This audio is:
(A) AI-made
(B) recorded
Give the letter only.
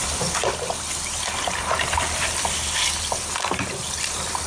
B